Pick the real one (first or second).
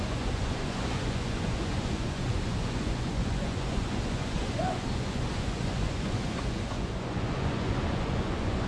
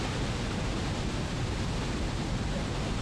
second